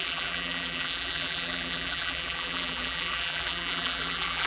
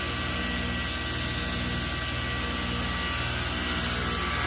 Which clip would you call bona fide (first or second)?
second